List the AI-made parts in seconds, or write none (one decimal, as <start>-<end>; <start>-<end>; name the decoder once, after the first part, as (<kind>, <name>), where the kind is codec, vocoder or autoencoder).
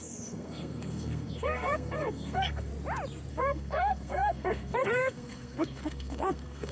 0.0-2.7 (codec, SNAC); 3.3-6.7